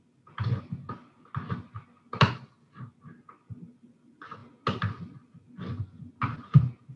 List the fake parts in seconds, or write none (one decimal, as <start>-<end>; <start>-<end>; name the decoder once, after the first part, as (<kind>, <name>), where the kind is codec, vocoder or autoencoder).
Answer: none